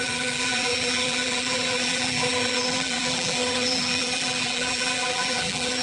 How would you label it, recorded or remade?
remade